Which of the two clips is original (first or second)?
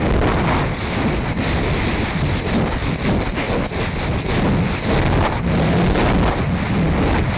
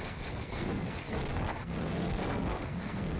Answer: first